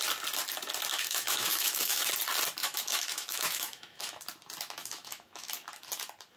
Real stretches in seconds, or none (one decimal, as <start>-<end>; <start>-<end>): 0.0-0.9; 2.1-2.6; 4.2-4.8; 5.5-6.4